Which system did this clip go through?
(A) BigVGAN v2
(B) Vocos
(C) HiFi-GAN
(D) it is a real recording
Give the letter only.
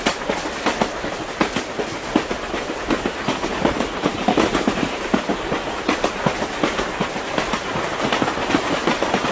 D